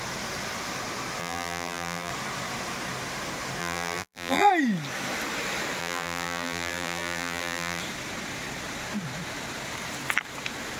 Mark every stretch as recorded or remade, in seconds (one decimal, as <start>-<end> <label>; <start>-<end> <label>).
0.0-1.2 recorded; 1.2-2.1 remade; 2.1-3.6 recorded; 3.6-4.5 remade; 4.5-5.8 recorded; 5.8-7.8 remade; 7.8-10.8 recorded